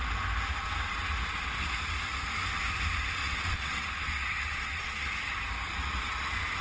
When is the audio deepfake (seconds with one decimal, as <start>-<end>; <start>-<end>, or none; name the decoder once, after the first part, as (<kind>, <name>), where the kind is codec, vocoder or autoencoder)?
3.2-5.1 (vocoder, WaveNeXt)